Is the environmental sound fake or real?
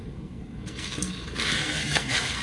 fake